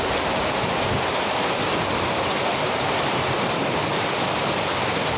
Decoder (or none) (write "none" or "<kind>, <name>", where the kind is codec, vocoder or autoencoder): none